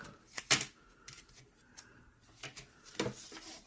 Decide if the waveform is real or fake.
real